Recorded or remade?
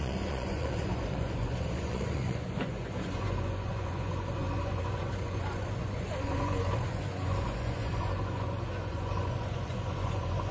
remade